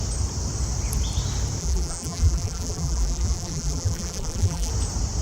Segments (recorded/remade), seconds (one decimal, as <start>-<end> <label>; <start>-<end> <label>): 0.0-1.6 recorded; 1.6-4.7 remade; 4.7-5.2 recorded